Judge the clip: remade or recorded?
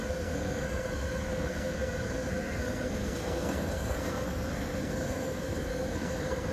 remade